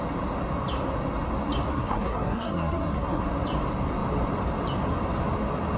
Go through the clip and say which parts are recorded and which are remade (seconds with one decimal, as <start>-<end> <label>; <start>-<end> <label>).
0.0-1.7 recorded; 1.7-3.2 remade; 3.2-5.8 recorded